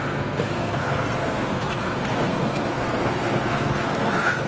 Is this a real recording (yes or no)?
no